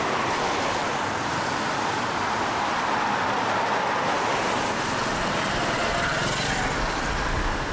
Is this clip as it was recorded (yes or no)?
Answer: yes